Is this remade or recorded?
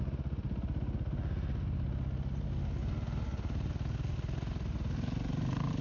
recorded